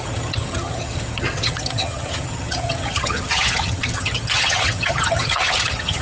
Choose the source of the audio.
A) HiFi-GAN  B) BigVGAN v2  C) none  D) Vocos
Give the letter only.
A